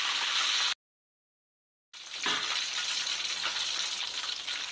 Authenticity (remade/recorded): recorded